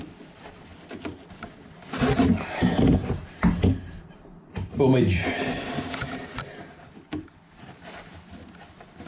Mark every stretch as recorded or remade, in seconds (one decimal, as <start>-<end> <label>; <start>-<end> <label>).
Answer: 0.0-9.1 recorded